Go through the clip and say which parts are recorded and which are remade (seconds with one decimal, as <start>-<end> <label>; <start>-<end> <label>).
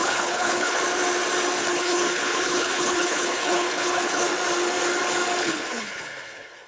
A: 0.0-0.8 remade; 0.8-1.6 recorded; 1.6-4.3 remade; 4.3-5.4 recorded; 5.4-6.7 remade